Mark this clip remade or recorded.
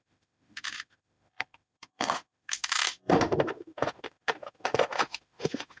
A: remade